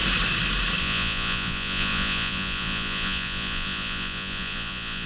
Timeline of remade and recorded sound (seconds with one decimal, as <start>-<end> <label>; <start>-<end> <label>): 0.0-0.8 recorded; 0.8-5.1 remade